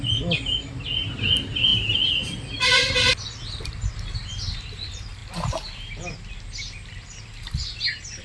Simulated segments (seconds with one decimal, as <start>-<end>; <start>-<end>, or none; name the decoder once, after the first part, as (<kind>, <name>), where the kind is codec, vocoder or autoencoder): none